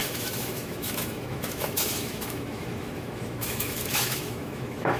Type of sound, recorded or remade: remade